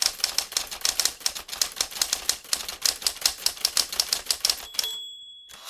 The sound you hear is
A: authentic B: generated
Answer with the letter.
A